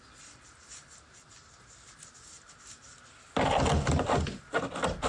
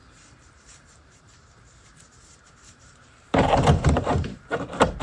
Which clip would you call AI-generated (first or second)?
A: second